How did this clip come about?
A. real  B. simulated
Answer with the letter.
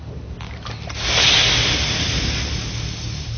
A